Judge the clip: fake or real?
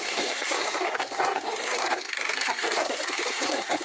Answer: fake